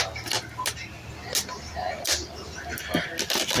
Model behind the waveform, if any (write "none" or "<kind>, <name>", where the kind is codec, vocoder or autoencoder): none